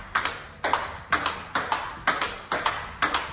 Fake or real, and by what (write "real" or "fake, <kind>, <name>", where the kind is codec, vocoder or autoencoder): real